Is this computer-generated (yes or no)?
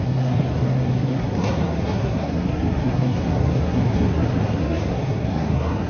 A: yes